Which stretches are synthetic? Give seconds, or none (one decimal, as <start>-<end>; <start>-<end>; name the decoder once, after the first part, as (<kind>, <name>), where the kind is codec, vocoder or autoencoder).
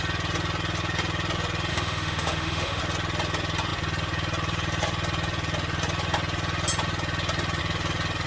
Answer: 1.7-2.8 (autoencoder, DAC-VAE)